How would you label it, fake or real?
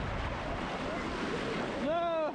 real